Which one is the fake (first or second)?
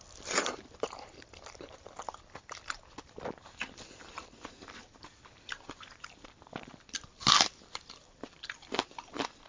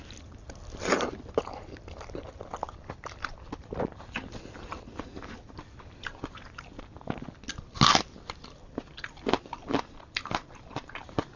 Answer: first